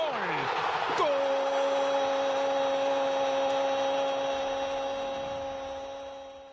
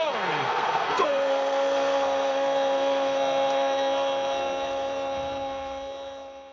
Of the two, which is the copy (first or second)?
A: second